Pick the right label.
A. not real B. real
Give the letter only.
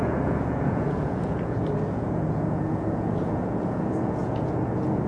A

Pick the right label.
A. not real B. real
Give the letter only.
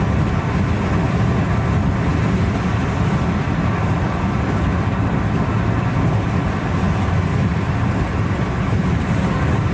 B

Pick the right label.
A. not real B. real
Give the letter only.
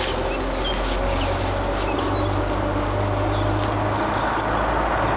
B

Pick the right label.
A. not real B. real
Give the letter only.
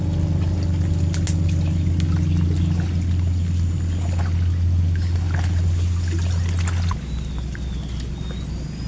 B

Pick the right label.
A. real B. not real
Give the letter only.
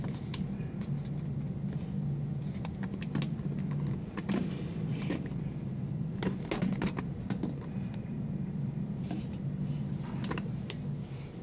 A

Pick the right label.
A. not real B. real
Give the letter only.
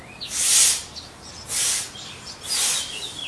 B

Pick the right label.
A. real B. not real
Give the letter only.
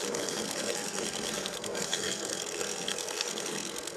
B